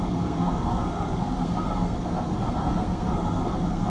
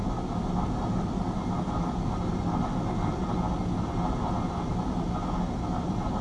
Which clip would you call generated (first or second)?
first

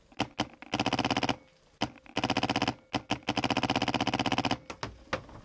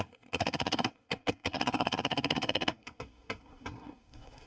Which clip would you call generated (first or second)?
second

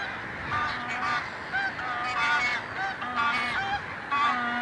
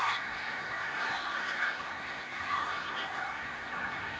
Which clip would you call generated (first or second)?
second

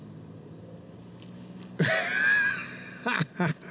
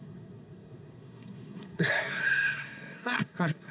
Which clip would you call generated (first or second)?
second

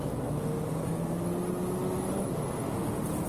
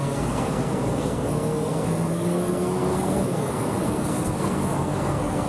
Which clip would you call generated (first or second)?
second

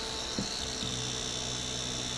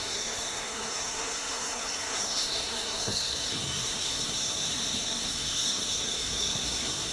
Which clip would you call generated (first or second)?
second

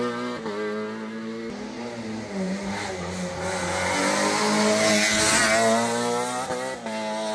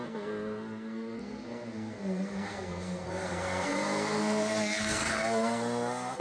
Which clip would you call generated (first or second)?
second